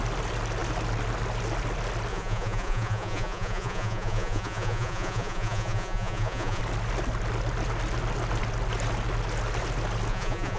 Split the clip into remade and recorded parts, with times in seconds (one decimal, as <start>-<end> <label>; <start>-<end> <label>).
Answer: 0.0-2.1 recorded; 2.1-6.6 remade; 6.6-10.1 recorded; 10.1-10.6 remade